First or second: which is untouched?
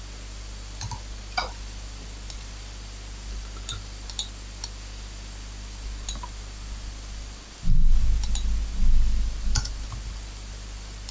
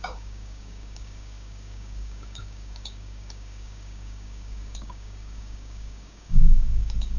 first